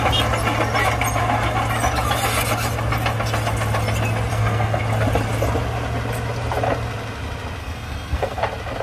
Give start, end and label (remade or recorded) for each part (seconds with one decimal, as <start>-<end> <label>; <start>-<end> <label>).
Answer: 0.0-4.3 recorded; 4.3-4.8 remade; 4.8-7.6 recorded; 7.6-8.4 remade; 8.4-8.8 recorded